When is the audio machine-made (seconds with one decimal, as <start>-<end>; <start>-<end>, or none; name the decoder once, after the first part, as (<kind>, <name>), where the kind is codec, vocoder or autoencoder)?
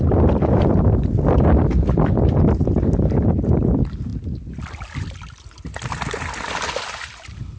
none